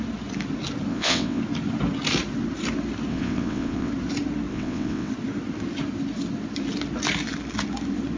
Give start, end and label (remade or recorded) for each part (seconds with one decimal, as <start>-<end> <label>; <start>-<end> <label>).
0.0-0.9 recorded; 0.9-1.4 remade; 1.4-3.1 recorded; 3.1-3.9 remade; 3.9-4.5 recorded; 4.5-5.1 remade; 5.1-8.2 recorded